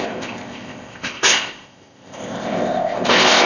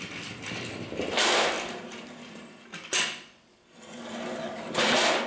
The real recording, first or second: second